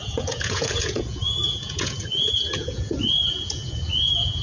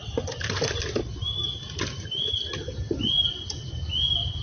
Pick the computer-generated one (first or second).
first